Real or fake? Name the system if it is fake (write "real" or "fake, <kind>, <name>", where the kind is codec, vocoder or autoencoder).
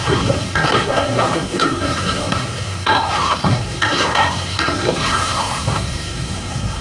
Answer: fake, codec, SNAC